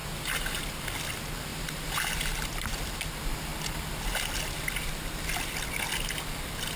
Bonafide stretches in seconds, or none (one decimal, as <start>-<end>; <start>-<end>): 0.6-1.5; 2.1-6.8